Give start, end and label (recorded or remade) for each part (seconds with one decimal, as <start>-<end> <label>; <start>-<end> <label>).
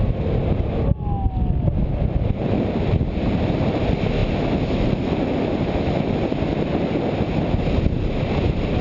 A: 0.0-8.8 recorded